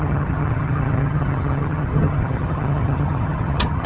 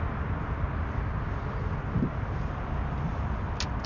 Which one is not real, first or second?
first